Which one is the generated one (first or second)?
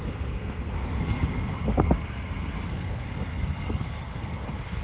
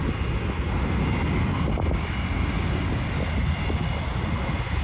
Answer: first